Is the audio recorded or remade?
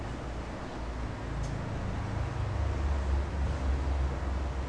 recorded